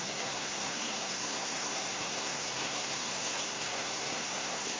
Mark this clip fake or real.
fake